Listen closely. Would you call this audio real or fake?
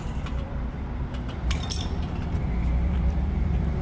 fake